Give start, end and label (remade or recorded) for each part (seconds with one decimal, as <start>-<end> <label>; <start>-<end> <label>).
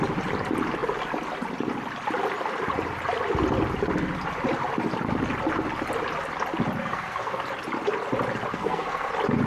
0.0-6.8 recorded; 6.8-7.4 remade; 7.4-8.5 recorded; 8.5-9.1 remade; 9.1-9.5 recorded